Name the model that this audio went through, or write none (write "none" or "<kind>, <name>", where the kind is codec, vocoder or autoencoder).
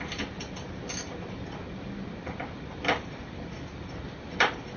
none